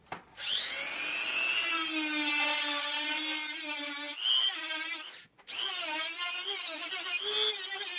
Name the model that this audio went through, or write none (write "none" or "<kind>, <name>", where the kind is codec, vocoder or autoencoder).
none